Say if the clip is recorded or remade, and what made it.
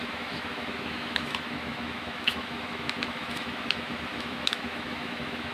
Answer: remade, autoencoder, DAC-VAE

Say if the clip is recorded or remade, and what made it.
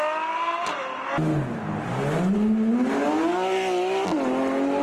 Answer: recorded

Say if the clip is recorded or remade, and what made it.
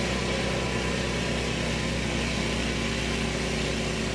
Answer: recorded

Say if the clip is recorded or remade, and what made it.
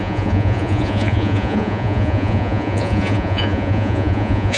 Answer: remade, vocoder, Vocos